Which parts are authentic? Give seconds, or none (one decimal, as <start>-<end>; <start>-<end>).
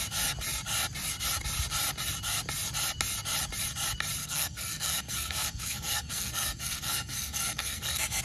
0.0-4.2